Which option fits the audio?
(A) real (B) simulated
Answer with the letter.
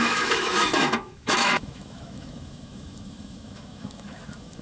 B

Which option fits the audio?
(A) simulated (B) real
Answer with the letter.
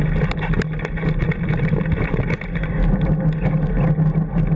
B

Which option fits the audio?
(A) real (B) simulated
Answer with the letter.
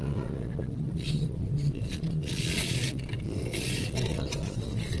B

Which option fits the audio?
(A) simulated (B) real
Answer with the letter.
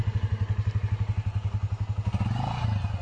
B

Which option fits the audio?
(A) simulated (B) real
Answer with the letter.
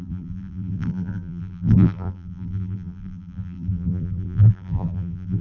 A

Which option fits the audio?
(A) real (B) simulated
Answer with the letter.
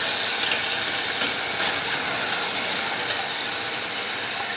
A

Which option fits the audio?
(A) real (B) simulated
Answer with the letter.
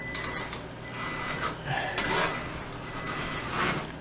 A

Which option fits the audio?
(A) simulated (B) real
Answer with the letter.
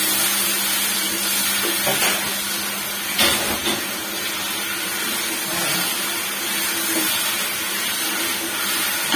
B